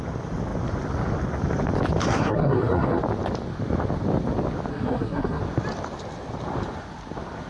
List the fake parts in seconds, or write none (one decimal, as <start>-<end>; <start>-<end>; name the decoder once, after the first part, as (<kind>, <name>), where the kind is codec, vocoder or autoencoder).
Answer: 2.0-3.0 (codec, SNAC); 4.7-5.4